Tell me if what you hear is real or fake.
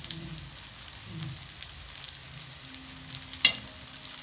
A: real